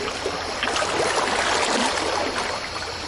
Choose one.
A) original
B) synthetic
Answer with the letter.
A